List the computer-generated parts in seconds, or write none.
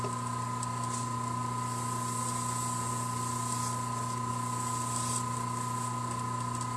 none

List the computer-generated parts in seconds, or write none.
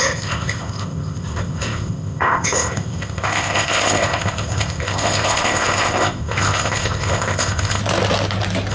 0.0-7.8 (codec, ZipCodec)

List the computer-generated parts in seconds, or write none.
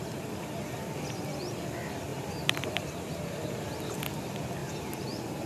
2.1-3.6 (vocoder, BigVGAN v2); 4.6-5.5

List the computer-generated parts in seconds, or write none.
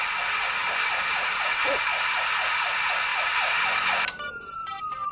0.6-2.3 (vocoder, BigVGAN v2)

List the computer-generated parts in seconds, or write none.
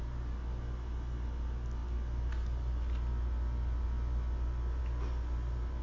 none